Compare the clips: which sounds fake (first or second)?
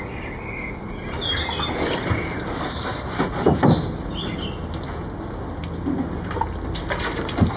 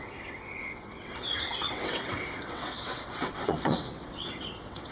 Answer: second